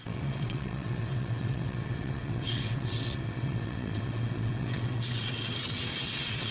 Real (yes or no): no